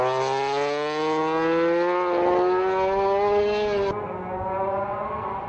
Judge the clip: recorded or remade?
recorded